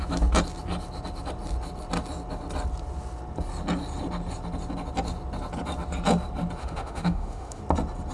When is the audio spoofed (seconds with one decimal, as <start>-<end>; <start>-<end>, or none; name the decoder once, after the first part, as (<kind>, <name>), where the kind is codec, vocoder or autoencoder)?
6.6-7.6 (autoencoder, DAC-VAE)